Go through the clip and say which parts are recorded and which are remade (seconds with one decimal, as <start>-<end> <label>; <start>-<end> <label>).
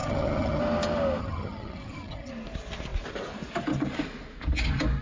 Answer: 0.0-0.6 remade; 0.6-1.2 recorded; 1.2-2.3 remade; 2.3-5.0 recorded